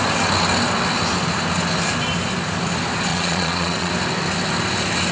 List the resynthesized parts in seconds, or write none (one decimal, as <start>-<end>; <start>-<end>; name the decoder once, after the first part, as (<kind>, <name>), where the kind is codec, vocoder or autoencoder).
3.1-3.9 (vocoder, Vocos)